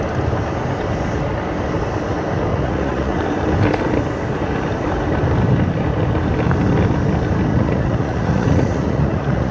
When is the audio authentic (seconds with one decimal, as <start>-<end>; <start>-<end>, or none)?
0.0-2.5; 3.2-7.5